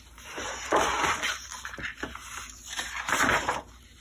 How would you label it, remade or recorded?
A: remade